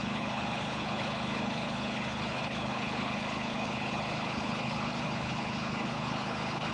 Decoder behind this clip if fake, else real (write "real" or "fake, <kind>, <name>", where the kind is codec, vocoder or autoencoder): fake, codec, HILCodec